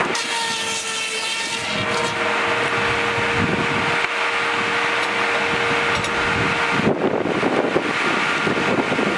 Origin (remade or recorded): recorded